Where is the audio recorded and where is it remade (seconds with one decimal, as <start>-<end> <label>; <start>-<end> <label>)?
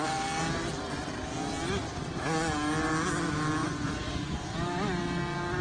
0.0-3.6 recorded; 3.6-4.5 remade; 4.5-5.6 recorded